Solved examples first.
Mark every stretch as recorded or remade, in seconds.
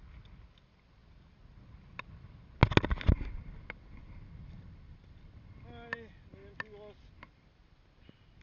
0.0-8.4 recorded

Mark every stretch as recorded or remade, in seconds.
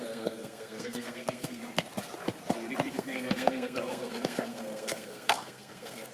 0.0-1.6 remade; 1.6-2.9 recorded; 2.9-6.1 remade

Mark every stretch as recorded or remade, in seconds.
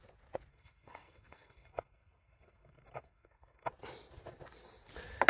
0.0-0.5 recorded; 0.5-3.7 remade; 3.7-5.3 recorded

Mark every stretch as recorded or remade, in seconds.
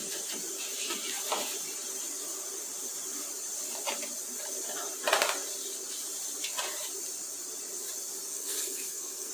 0.0-8.3 recorded; 8.3-9.3 remade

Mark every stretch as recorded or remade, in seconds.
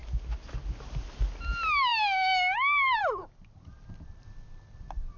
0.0-5.2 recorded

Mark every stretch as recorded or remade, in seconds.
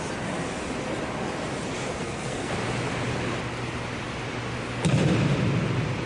0.0-2.0 recorded; 2.0-2.5 remade; 2.5-6.1 recorded